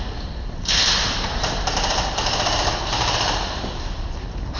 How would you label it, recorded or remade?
recorded